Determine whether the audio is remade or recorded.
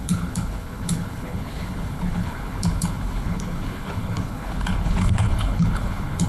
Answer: remade